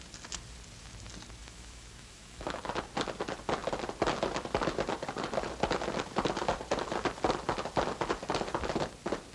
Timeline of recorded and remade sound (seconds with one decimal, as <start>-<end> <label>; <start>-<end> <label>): 0.0-1.4 recorded; 1.4-2.6 remade; 2.6-9.3 recorded